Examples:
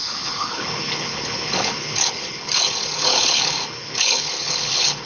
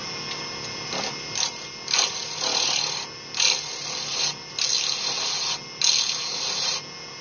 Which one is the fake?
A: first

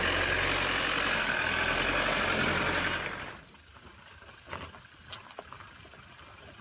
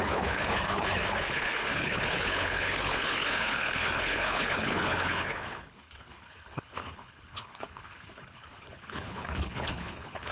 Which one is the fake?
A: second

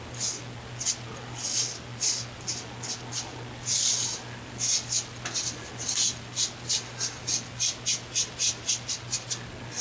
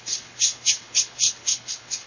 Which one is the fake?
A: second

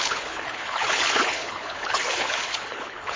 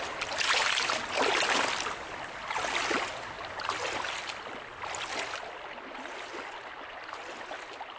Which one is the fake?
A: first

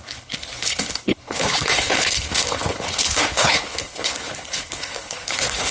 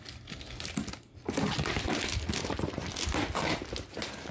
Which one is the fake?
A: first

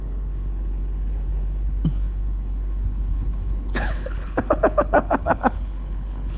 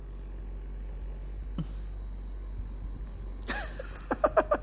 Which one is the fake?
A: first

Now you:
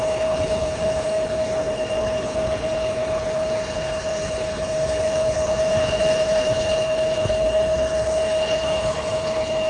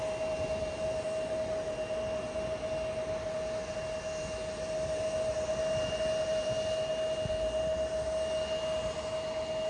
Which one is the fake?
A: first